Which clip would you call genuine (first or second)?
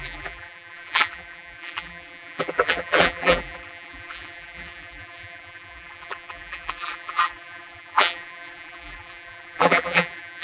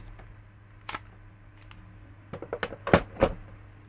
second